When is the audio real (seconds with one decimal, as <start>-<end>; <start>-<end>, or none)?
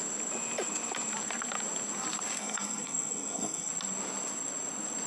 0.0-2.4; 3.7-5.1